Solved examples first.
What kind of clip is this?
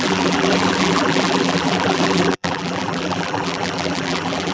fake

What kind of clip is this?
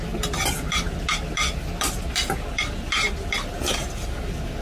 real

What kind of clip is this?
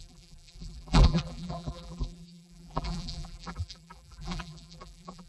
fake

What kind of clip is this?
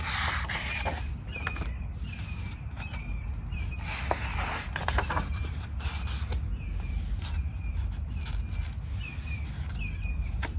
real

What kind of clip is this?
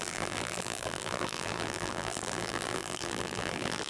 fake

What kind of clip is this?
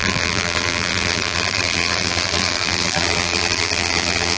fake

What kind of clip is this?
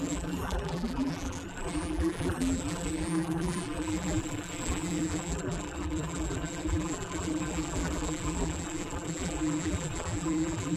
fake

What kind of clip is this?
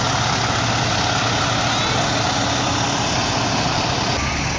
real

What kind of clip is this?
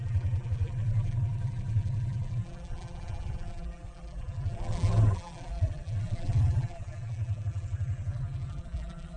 fake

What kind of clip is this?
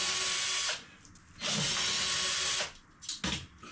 real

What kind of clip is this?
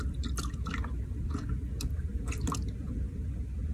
real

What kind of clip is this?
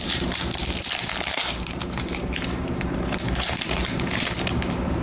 fake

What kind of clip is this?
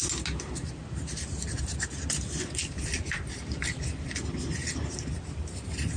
real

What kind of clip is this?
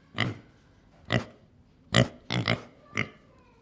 real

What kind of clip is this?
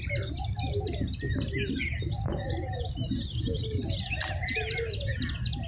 real